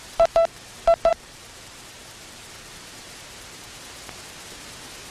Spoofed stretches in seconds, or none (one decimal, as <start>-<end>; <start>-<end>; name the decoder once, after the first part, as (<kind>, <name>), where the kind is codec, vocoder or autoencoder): 1.1-3.8 (vocoder, BigVGAN v2)